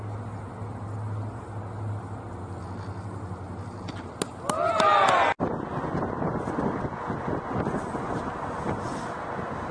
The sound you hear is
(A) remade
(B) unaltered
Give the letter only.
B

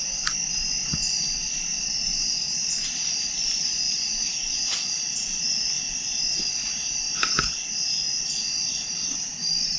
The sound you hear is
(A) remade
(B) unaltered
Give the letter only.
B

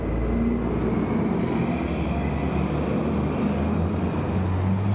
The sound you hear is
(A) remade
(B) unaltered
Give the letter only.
B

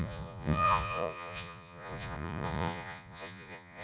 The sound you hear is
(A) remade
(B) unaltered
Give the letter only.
A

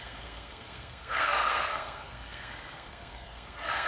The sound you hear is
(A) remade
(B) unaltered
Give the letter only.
A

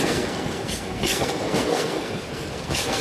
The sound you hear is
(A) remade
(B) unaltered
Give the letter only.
A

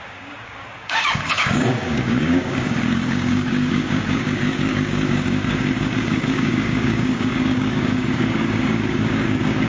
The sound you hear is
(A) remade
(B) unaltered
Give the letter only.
A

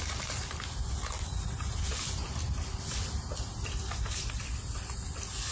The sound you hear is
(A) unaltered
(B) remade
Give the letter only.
A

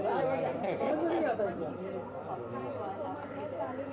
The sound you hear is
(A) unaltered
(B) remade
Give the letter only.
A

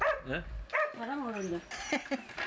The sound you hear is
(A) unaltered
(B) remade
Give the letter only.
A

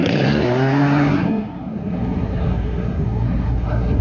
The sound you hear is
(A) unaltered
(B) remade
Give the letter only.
B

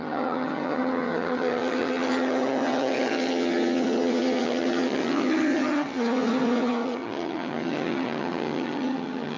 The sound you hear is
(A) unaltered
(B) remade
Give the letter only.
B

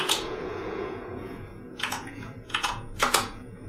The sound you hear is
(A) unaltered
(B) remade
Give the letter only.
B